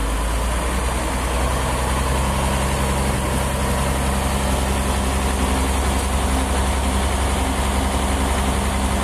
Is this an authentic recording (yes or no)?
yes